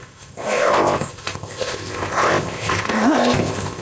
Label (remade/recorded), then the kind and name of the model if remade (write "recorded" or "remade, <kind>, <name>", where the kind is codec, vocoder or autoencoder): remade, codec, ZipCodec